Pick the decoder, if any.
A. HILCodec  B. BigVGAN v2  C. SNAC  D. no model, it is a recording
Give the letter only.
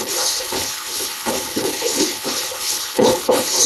A